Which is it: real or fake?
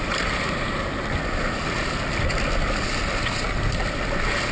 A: real